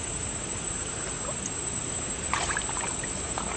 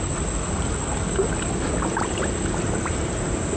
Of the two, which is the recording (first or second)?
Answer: second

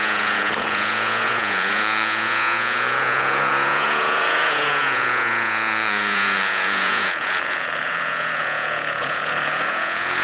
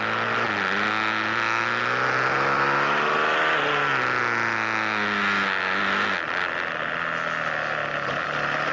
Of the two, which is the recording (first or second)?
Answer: second